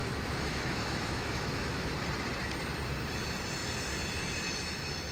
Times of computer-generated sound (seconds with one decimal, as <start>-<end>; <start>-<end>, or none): 0.0-1.9